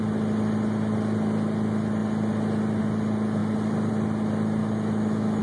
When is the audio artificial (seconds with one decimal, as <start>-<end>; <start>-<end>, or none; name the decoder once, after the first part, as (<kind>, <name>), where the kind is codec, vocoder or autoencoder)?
4.6-5.4 (autoencoder, DAC-VAE)